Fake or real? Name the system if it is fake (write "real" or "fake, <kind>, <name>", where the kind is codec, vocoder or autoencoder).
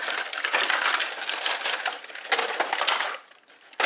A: real